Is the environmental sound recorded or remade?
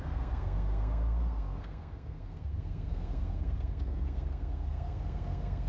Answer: remade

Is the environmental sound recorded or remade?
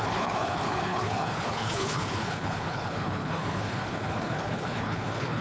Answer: remade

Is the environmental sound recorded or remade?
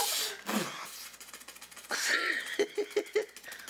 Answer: recorded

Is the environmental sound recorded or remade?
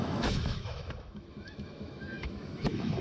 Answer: remade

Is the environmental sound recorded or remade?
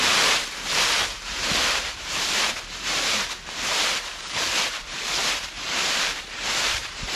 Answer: remade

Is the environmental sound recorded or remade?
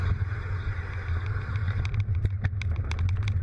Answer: recorded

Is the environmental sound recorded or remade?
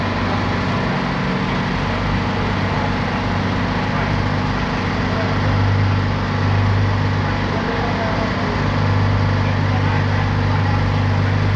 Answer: recorded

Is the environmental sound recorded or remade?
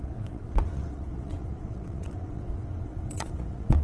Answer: remade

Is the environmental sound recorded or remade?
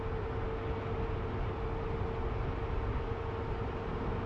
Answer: recorded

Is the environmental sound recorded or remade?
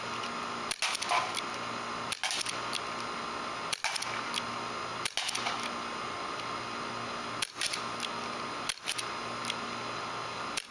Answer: recorded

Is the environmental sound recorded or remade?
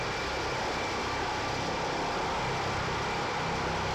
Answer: recorded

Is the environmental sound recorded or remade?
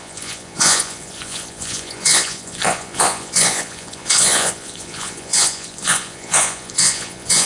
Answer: remade